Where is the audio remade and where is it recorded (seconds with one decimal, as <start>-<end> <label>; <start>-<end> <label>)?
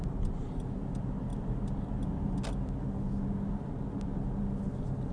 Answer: 0.0-5.1 recorded